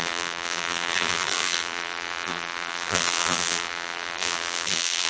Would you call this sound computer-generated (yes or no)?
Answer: yes